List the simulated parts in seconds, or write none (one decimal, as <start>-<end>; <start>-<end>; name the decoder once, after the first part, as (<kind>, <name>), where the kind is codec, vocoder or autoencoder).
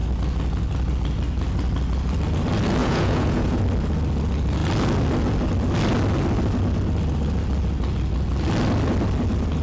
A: 2.8-3.6 (vocoder, Vocos)